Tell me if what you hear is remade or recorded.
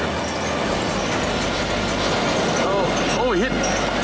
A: recorded